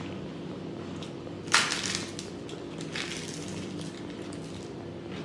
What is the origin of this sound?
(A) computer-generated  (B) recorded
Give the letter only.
B